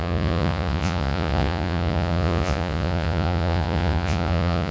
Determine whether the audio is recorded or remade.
remade